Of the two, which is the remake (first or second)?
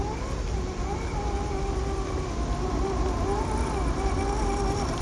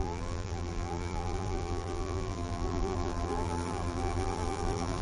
second